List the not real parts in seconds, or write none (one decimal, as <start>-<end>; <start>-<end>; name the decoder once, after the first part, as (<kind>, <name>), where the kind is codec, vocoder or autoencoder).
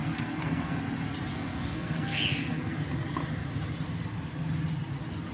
0.0-0.8 (codec, SNAC); 1.3-2.8